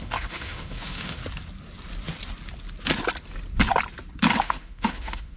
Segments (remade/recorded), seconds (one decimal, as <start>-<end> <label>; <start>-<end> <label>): 0.0-1.2 remade; 1.2-4.4 recorded; 4.4-5.4 remade

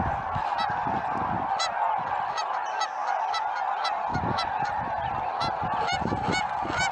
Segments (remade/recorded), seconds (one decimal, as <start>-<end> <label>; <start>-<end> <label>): 0.0-6.9 recorded

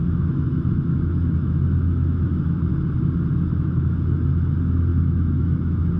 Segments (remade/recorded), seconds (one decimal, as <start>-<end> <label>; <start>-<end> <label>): 0.0-2.7 remade; 2.7-3.3 recorded; 3.3-6.0 remade

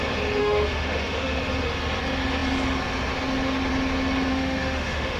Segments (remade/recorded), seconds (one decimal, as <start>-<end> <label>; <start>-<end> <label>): 0.0-0.4 recorded; 0.4-1.4 remade; 1.4-4.3 recorded; 4.3-5.2 remade

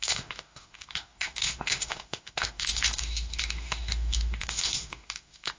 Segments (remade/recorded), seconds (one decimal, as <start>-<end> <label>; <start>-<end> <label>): 0.0-5.6 remade